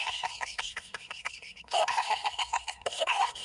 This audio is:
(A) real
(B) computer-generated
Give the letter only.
B